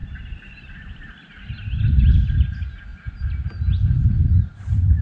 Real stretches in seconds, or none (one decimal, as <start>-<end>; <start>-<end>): 0.0-5.0